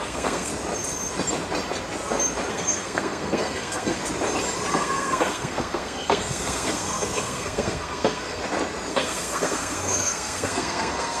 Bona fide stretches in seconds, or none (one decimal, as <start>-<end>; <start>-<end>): 0.5-2.5; 4.0-4.7; 8.4-8.9

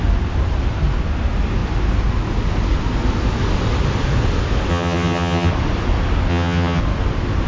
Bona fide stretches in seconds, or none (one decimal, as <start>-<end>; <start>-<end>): 0.0-4.7; 5.5-6.3; 6.8-7.5

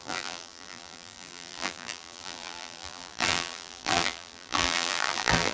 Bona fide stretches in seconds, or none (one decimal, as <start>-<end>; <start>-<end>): none